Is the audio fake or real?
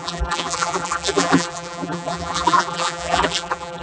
fake